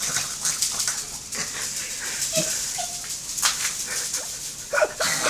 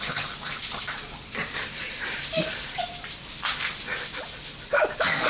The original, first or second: first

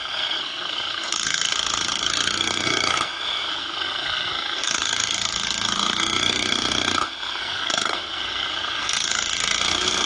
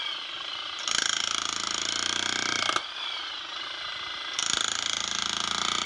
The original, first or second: second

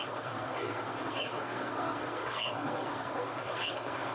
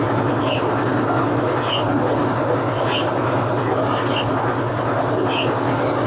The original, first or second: second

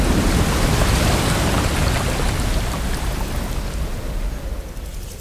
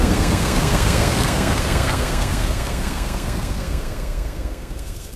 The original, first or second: first